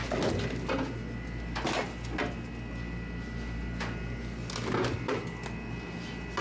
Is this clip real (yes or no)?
yes